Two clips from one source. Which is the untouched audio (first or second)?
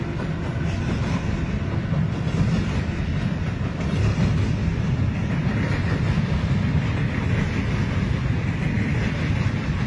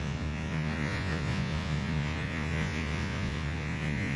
first